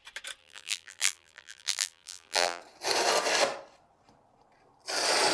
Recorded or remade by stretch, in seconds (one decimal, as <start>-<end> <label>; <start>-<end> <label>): 0.0-0.4 recorded; 0.4-2.6 remade; 2.6-5.3 recorded